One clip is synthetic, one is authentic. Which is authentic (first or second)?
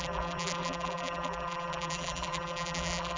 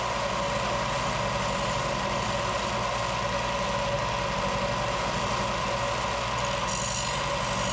second